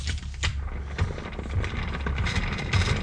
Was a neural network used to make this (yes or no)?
no